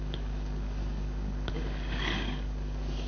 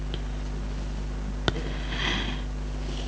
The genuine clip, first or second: second